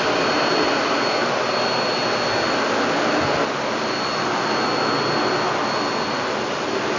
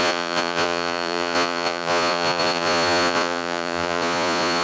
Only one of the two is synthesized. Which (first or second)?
second